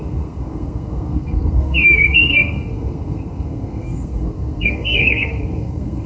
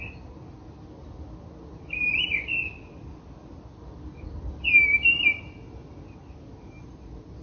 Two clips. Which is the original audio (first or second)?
second